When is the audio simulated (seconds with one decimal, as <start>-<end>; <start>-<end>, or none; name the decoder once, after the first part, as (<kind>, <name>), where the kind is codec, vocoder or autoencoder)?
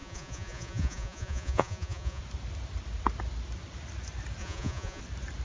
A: 0.0-2.2 (vocoder, Vocos); 4.4-5.0